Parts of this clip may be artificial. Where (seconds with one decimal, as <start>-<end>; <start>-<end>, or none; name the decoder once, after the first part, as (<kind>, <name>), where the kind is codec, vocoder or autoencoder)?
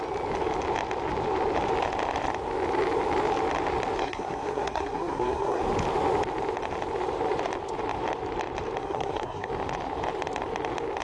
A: 4.0-5.6 (codec, SNAC); 8.8-9.5